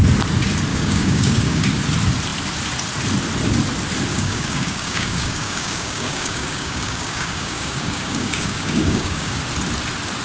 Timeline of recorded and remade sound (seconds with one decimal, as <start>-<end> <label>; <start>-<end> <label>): 0.0-0.7 recorded; 0.7-1.6 remade; 1.6-4.1 recorded; 4.1-9.4 remade; 9.4-10.2 recorded